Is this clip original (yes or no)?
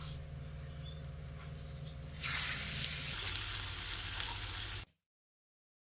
yes